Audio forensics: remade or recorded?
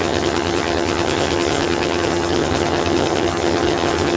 remade